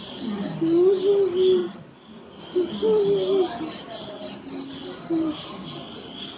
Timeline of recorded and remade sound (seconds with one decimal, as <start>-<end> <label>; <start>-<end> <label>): 0.0-1.6 recorded; 1.6-2.4 remade; 2.4-6.4 recorded